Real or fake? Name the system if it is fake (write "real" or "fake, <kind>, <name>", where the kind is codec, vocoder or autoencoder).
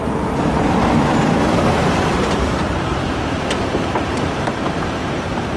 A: fake, vocoder, BigVGAN v2